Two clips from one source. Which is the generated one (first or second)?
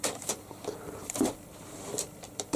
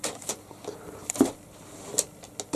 first